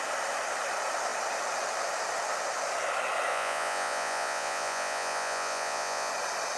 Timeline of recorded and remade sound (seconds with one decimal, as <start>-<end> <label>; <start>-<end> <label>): 0.0-3.3 recorded; 3.3-6.1 remade; 6.1-6.6 recorded